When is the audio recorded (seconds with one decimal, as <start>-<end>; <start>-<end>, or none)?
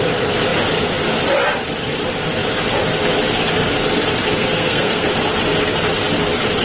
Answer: 0.0-4.4; 5.1-6.6